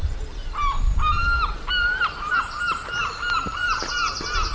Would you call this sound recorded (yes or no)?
yes